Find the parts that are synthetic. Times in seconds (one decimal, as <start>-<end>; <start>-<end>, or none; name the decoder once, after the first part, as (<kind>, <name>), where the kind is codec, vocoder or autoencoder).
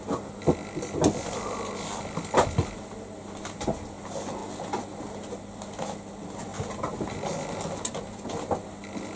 none